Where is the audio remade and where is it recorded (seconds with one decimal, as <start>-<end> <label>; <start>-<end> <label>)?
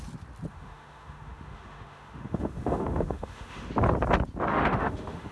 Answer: 0.0-0.5 recorded; 0.5-3.7 remade; 3.7-4.5 recorded; 4.5-5.3 remade